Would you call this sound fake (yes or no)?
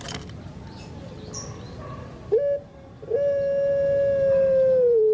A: no